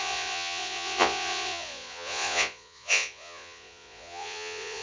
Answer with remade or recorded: remade